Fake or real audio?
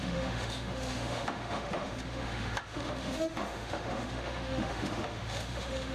fake